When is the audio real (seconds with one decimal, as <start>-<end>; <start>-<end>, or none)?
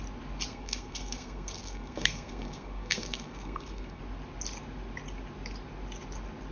0.0-0.5; 4.0-6.5